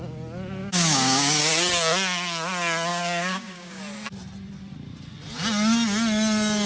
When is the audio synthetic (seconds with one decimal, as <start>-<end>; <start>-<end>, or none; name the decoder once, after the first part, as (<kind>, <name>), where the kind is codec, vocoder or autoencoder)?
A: 0.6-1.4 (codec, DAC); 2.9-3.8